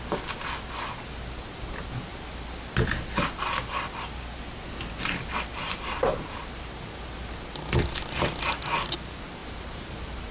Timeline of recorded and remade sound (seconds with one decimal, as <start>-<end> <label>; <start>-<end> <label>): 0.0-9.4 recorded; 9.4-10.3 remade